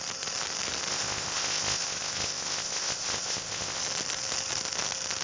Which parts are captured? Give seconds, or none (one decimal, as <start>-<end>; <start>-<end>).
0.0-0.9; 3.8-5.2